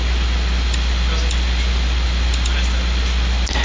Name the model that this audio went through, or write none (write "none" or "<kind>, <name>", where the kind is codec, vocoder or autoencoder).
none